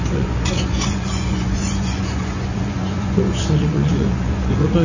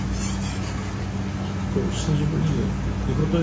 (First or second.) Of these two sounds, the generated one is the first